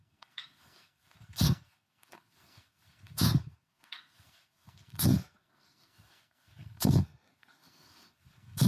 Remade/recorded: remade